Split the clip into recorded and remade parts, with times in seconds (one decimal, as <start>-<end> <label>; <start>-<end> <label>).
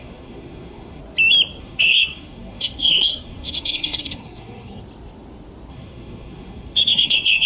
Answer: 0.0-1.0 remade; 1.0-1.6 recorded; 1.6-4.8 remade; 4.8-5.7 recorded; 5.7-7.5 remade